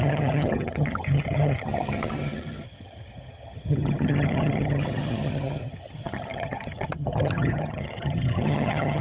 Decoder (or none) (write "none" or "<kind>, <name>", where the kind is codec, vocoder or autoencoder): vocoder, HiFi-GAN